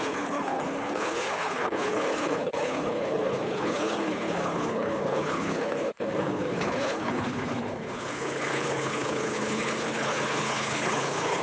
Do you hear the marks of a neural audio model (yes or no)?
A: yes